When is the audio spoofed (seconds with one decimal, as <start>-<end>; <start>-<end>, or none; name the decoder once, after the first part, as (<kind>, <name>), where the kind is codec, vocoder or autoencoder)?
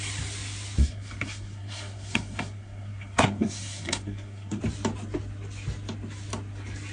0.8-4.6 (codec, SNAC)